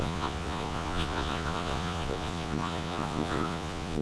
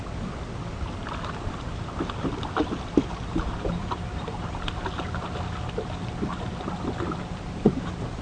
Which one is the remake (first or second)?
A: first